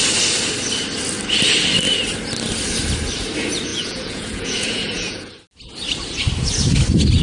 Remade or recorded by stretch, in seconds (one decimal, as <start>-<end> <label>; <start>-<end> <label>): 0.0-3.7 recorded; 3.7-5.3 remade; 5.3-7.2 recorded